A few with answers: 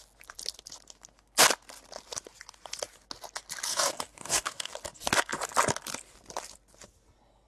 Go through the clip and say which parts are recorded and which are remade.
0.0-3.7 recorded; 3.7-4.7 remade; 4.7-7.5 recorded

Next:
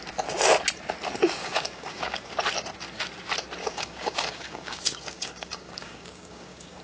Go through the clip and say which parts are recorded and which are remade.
0.0-1.4 recorded; 1.4-2.3 remade; 2.3-3.6 recorded; 3.6-6.8 remade